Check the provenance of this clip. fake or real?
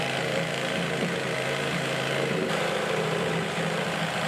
fake